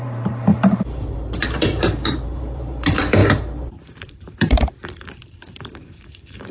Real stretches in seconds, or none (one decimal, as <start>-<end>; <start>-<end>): none